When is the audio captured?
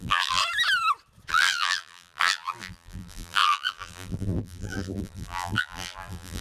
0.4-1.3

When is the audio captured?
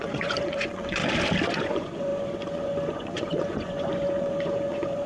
1.0-1.5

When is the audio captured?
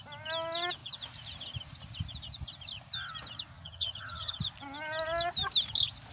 0.0-3.5; 4.4-6.1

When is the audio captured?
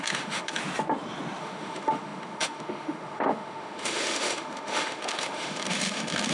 0.6-1.4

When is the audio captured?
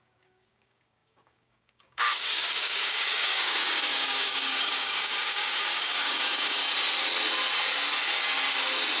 6.6-9.0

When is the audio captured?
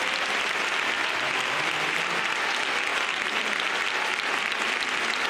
0.0-5.3